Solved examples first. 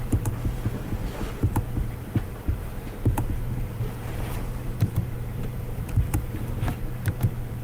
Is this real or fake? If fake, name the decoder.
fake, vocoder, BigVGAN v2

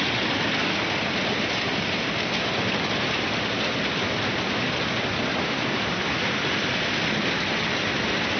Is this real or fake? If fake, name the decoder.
real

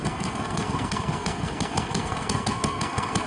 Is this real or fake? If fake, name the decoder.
fake, codec, SNAC